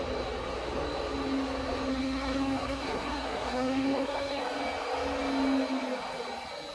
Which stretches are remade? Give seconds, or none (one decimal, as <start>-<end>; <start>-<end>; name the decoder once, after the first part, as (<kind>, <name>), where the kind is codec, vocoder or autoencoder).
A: 1.9-4.4 (codec, SNAC)